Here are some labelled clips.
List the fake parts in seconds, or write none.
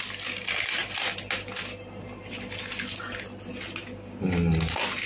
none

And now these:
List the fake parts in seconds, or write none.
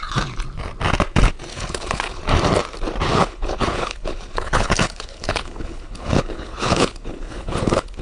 1.5-2.2; 3.1-8.0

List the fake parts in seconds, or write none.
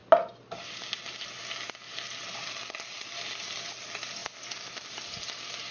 none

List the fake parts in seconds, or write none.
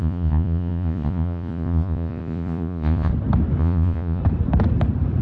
0.0-3.1; 3.6-4.2